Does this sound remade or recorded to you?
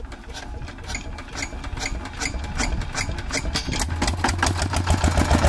recorded